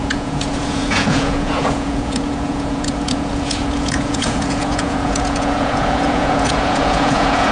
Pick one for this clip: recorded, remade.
remade